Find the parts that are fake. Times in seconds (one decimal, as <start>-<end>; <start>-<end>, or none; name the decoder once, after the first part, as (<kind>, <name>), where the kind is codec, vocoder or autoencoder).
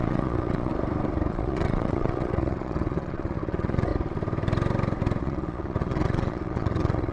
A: 0.0-0.7 (vocoder, Vocos); 1.3-3.9; 5.2-7.1